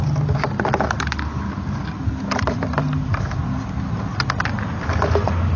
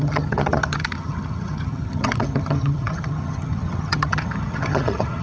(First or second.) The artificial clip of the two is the second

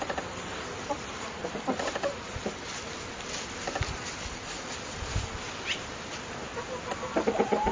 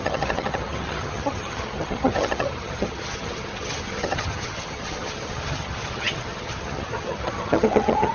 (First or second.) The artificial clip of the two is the second